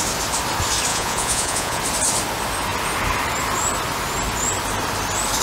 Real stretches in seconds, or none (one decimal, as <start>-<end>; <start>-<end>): 0.0-0.9; 1.8-5.4

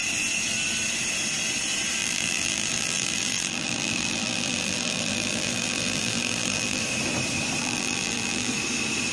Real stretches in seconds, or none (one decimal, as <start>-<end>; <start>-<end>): 0.0-2.0; 6.8-7.6; 8.5-9.1

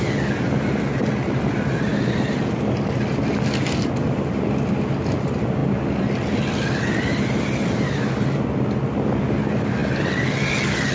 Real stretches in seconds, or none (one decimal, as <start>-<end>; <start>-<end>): 0.0-10.9

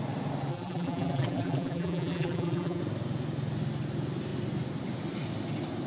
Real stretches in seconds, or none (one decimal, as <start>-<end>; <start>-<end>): 0.0-0.5; 2.8-5.9